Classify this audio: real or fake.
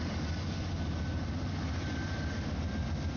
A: real